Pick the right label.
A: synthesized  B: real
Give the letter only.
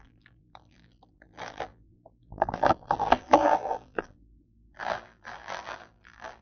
A